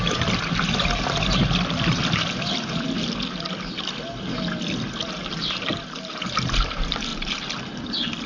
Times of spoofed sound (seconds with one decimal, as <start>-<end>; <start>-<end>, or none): none